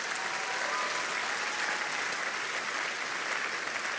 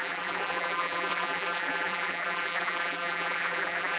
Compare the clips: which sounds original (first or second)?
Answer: first